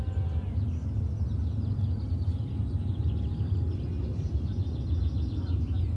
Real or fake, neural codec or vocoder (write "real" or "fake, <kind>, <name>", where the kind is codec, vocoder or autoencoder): real